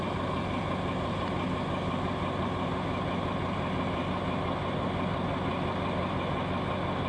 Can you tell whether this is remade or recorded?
recorded